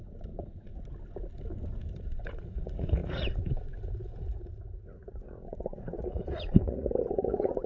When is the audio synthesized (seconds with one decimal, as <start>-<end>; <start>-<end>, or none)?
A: 0.0-0.7; 1.9-7.7